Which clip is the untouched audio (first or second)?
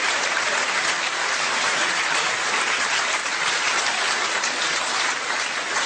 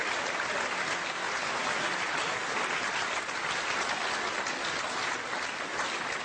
second